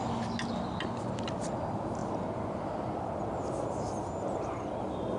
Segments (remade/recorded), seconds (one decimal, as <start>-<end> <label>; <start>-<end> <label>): 0.0-5.2 recorded